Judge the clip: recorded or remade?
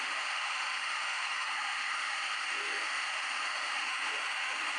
remade